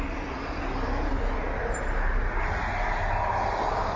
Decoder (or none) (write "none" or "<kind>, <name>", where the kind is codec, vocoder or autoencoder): none